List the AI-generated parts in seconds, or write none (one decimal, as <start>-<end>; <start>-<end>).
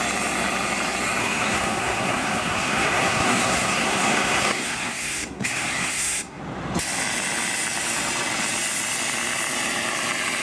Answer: 1.2-6.4